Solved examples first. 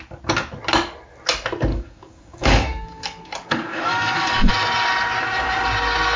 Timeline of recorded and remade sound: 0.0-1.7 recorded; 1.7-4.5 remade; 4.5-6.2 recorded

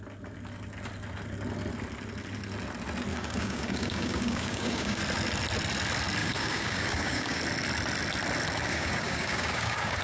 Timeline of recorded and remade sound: 0.0-3.1 recorded; 3.1-5.0 remade; 5.0-6.2 recorded; 6.2-7.4 remade; 7.4-8.7 recorded; 8.7-10.0 remade